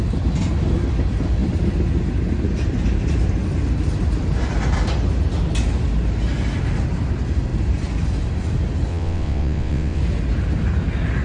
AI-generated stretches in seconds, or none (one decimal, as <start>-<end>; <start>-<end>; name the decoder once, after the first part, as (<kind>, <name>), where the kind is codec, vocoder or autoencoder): 8.9-10.0 (vocoder, WaveNeXt)